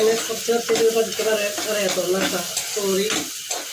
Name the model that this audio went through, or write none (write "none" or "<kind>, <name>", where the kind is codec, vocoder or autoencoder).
none